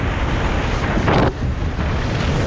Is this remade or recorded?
recorded